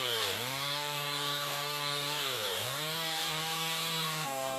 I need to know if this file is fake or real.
fake